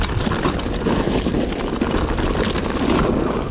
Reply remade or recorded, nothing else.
recorded